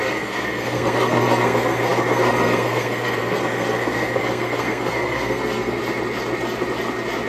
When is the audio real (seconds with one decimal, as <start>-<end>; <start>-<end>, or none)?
5.8-7.3